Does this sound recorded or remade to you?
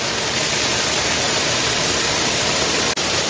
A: recorded